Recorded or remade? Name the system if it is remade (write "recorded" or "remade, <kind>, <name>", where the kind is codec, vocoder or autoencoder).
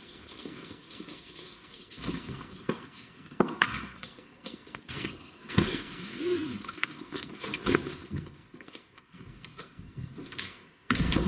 remade, codec, SNAC